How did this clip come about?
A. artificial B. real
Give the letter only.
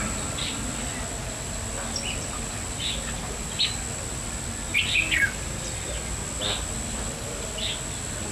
B